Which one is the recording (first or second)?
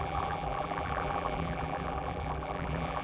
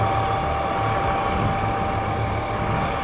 second